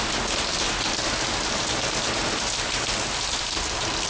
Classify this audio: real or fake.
real